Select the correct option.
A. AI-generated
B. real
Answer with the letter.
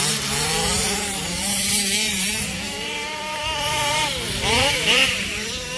A